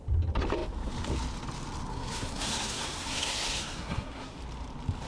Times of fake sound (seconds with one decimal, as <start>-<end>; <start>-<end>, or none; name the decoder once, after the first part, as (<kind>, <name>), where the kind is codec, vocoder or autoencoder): 1.9-4.4 (codec, SNAC)